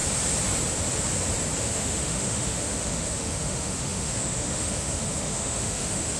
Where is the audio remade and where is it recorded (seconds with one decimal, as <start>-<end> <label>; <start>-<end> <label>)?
0.0-1.6 recorded; 1.6-6.2 remade